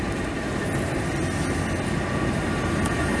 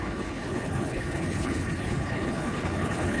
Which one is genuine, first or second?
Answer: first